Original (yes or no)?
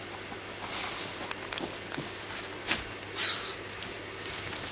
yes